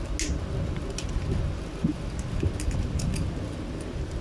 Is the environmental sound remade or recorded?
recorded